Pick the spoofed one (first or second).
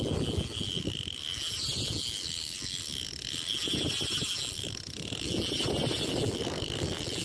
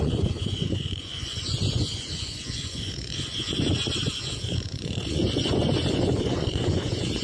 second